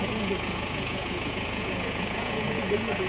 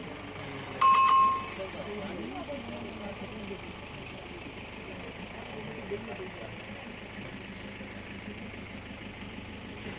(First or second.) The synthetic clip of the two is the first